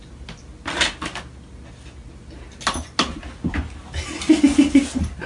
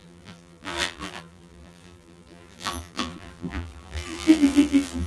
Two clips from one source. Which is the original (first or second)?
first